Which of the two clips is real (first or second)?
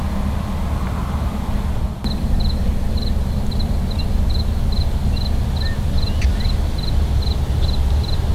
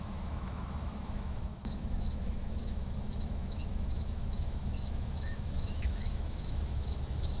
first